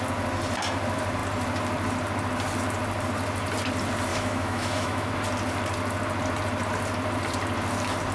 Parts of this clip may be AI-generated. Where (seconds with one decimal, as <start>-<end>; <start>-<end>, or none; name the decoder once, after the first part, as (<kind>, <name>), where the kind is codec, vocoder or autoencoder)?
4.1-5.1 (autoencoder, DAC-VAE)